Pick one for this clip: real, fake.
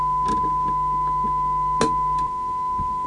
real